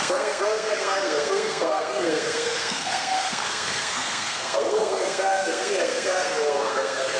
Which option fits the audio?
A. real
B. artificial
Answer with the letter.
B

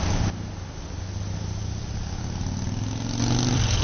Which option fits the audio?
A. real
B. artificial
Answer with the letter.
A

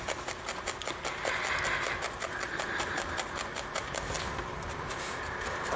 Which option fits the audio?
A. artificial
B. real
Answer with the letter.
B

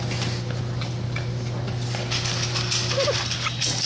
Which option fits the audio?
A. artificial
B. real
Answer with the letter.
B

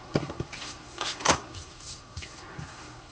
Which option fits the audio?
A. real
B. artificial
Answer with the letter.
B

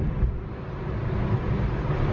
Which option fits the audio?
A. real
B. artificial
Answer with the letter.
A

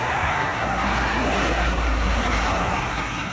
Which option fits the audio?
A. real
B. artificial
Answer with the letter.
B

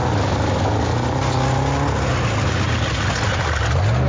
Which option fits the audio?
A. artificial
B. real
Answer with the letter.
B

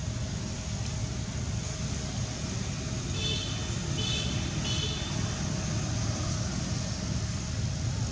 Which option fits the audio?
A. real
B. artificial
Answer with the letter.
A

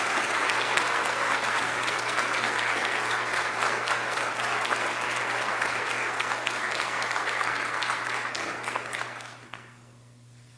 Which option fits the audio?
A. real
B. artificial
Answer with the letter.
B